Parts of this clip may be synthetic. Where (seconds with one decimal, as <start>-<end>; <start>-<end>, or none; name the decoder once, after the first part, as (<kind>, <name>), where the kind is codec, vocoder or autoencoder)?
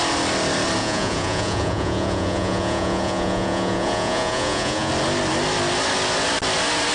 0.8-4.9 (vocoder, Vocos)